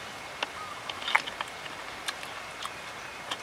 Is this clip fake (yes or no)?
no